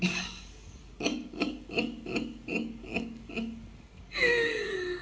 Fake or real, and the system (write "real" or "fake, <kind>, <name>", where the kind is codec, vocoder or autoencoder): fake, codec, DAC